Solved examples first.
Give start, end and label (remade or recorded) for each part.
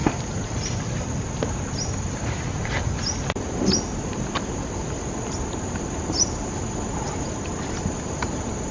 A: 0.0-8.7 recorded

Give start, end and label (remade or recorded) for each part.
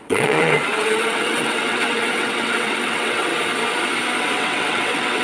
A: 0.0-3.3 remade; 3.3-4.2 recorded; 4.2-5.2 remade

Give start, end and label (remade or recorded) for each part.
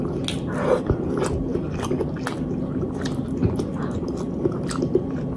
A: 0.0-5.4 recorded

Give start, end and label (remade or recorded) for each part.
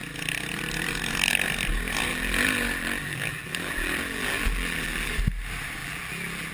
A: 0.0-2.1 recorded; 2.1-5.1 remade; 5.1-5.8 recorded; 5.8-6.5 remade